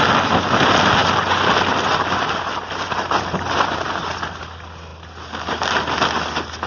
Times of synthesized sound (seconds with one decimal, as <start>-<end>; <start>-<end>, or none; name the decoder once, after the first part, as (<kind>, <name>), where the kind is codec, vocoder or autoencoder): none